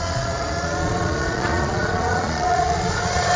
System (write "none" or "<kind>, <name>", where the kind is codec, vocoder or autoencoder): vocoder, Vocos